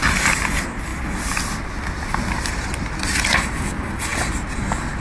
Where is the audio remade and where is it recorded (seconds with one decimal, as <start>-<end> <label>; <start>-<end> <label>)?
0.0-5.0 recorded